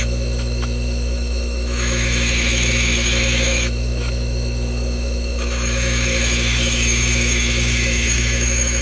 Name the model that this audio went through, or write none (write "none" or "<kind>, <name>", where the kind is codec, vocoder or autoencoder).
autoencoder, DAC-VAE